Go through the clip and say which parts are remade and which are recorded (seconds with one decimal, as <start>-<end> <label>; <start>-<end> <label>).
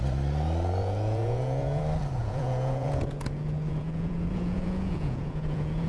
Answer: 0.0-0.8 recorded; 0.8-1.8 remade; 1.8-2.2 recorded; 2.2-5.9 remade